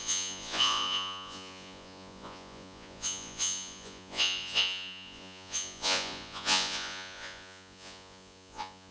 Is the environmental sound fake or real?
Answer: fake